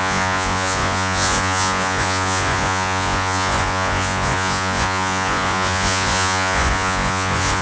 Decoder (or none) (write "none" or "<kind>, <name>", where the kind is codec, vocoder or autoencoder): vocoder, Vocos